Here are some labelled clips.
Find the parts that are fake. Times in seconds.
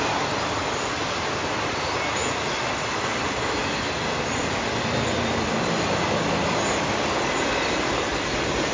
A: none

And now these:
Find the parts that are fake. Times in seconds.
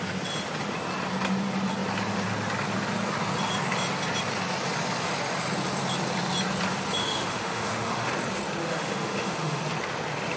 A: 7.0-8.1 (autoencoder, DAC-VAE); 8.6-9.6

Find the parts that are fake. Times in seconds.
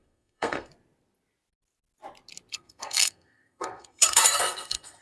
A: 0.0-0.7 (codec, SNAC); 2.5-5.0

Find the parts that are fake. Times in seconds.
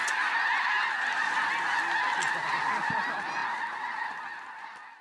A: 3.4-4.2 (vocoder, BigVGAN v2)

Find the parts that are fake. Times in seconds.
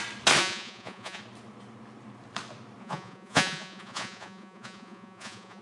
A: 0.4-1.2 (vocoder, Vocos); 2.8-5.6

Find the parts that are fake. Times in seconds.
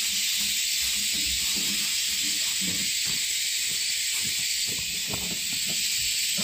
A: 2.8-5.1 (vocoder, BigVGAN v2)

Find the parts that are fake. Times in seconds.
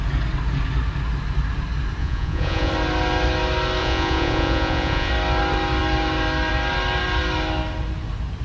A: 2.0-2.7 (vocoder, Vocos); 3.8-5.1